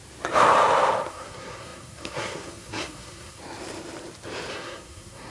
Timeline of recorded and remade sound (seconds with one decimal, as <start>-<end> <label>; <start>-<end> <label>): 0.0-1.1 recorded; 1.1-3.4 remade; 3.4-4.5 recorded; 4.5-5.3 remade